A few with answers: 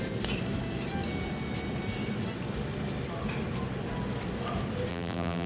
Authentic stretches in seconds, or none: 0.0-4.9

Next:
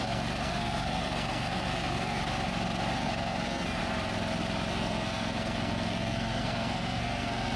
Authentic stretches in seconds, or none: 2.2-3.0; 3.8-4.7

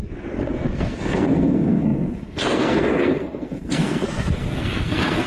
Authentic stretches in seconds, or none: none

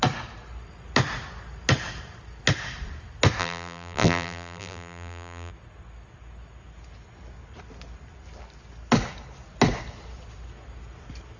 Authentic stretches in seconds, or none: 0.0-3.4; 5.5-11.4

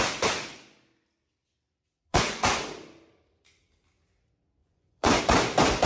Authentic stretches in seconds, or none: 0.0-2.1; 2.6-4.6; 5.2-5.9

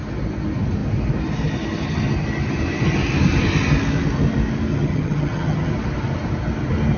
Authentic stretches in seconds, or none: 0.0-4.7; 5.7-7.0